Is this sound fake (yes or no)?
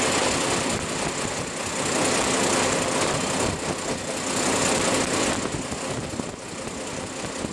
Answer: no